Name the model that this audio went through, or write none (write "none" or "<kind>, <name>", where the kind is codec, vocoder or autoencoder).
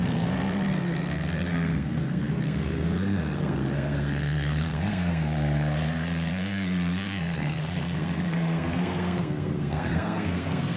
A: codec, SNAC